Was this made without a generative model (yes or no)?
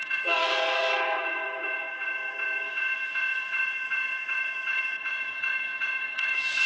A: no